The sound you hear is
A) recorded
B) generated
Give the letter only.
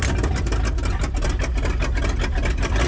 A